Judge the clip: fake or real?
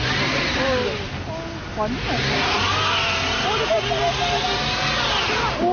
real